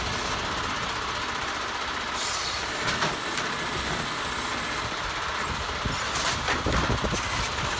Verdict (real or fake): real